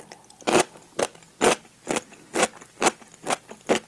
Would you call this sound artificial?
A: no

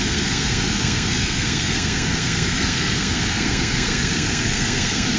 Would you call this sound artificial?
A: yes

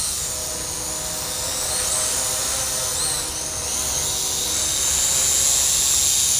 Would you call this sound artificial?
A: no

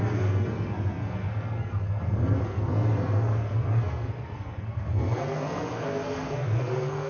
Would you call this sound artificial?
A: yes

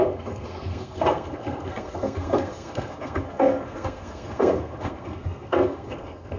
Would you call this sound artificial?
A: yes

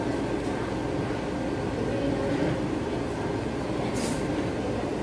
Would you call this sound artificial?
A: no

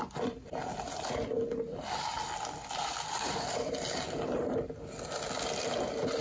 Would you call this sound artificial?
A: no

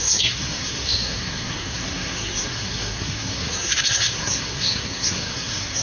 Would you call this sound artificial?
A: yes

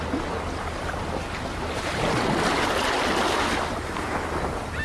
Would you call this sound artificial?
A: no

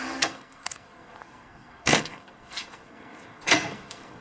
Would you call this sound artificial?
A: yes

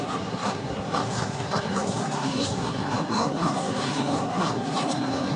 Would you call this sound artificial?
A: yes